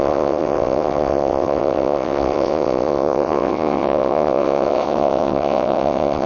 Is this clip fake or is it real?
fake